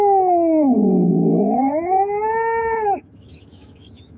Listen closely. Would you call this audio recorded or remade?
remade